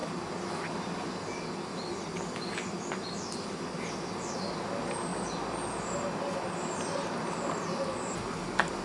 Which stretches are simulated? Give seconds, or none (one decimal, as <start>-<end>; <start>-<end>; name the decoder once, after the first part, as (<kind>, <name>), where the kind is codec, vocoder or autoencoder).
none